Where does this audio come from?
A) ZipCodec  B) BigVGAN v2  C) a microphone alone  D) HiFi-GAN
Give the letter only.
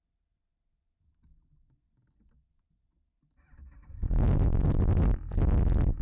C